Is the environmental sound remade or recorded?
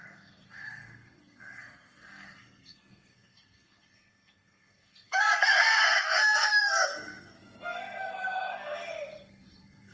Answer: remade